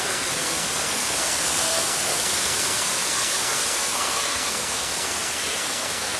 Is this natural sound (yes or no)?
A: no